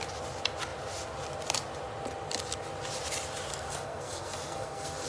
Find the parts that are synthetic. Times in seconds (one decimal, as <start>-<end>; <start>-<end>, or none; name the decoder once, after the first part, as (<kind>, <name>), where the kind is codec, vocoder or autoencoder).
3.5-5.1 (codec, SNAC)